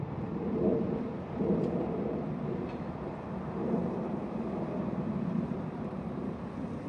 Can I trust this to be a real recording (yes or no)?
yes